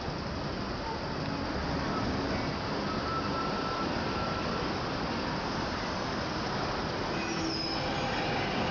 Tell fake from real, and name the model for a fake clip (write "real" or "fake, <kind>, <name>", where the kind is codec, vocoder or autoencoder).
real